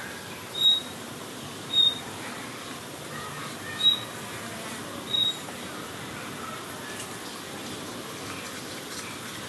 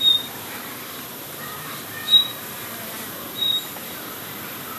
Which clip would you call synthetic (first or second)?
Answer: second